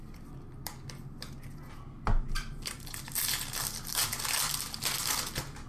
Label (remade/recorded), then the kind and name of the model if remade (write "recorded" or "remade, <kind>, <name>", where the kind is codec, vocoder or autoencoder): recorded